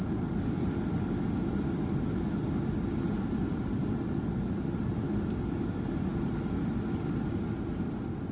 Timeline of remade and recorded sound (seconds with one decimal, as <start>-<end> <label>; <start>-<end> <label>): 0.0-8.3 recorded